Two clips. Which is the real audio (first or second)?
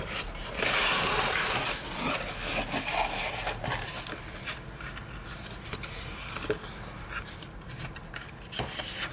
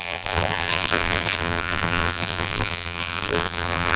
first